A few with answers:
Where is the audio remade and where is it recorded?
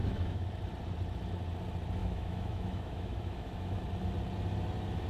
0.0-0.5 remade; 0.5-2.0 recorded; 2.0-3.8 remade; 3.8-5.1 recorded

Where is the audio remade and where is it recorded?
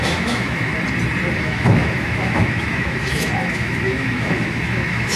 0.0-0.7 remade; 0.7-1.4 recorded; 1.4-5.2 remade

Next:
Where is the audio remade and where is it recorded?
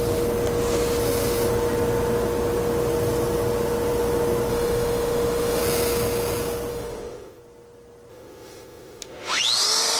0.0-4.5 recorded; 4.5-5.6 remade; 5.6-6.7 recorded; 6.7-7.4 remade; 7.4-8.1 recorded; 8.1-9.4 remade; 9.4-10.0 recorded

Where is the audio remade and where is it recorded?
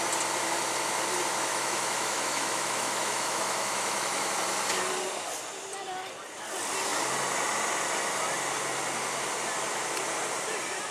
0.0-1.5 recorded; 1.5-4.3 remade; 4.3-10.9 recorded